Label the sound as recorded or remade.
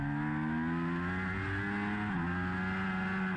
recorded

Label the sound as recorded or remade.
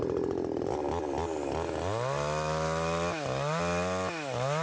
recorded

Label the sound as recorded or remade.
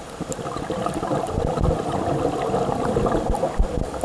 recorded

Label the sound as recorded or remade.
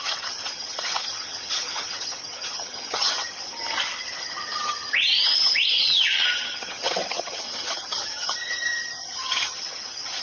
remade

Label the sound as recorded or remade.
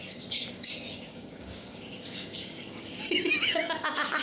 remade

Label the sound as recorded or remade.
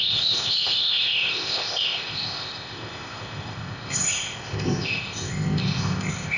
remade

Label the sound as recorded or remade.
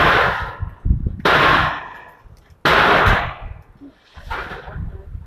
recorded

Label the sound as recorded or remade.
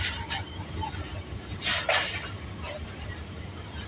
remade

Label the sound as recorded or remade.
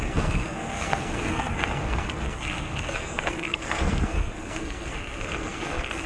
remade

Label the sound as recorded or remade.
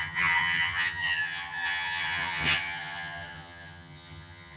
remade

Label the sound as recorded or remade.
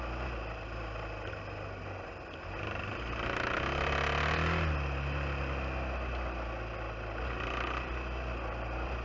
recorded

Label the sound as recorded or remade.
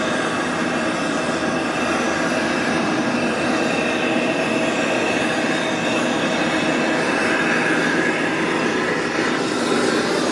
recorded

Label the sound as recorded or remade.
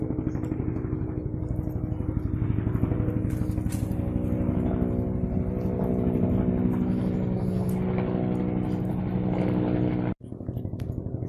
recorded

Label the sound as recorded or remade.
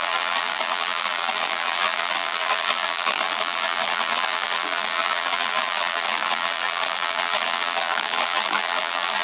remade